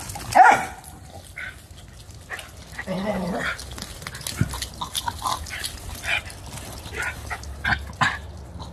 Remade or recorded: recorded